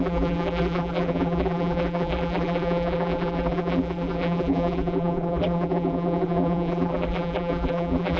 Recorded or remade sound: remade